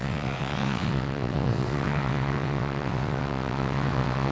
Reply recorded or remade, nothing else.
remade